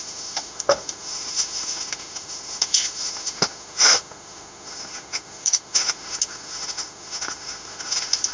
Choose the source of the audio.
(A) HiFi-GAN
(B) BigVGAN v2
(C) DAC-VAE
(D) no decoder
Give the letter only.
C